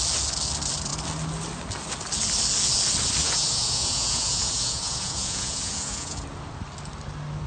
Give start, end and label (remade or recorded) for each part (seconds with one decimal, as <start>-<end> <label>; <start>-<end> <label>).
0.0-3.2 recorded; 3.2-6.2 remade; 6.2-7.5 recorded